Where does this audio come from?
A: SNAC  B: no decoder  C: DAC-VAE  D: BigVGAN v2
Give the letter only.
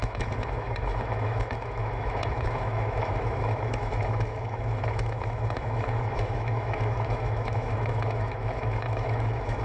C